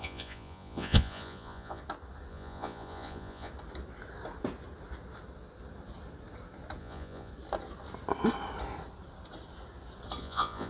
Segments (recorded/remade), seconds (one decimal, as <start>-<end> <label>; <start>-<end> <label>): 0.0-1.8 remade; 1.8-2.3 recorded; 2.3-3.5 remade; 3.5-6.8 recorded; 6.8-7.3 remade; 7.3-10.2 recorded; 10.2-10.7 remade